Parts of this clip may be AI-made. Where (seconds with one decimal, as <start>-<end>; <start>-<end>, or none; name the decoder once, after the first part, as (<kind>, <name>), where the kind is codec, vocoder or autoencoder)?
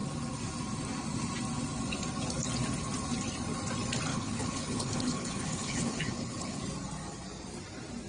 4.1-6.6 (codec, HILCodec)